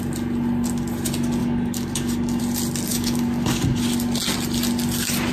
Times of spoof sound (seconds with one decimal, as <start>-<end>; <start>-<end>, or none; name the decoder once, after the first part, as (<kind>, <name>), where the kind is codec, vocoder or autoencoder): 1.4-2.4 (codec, DAC); 2.9-3.8